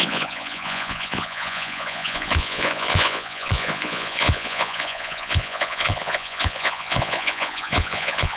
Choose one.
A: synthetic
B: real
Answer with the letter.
A